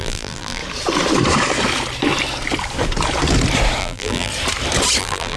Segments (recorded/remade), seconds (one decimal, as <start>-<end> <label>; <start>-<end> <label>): 0.0-0.6 remade; 0.6-3.8 recorded; 3.8-4.3 remade; 4.3-5.0 recorded; 5.0-5.4 remade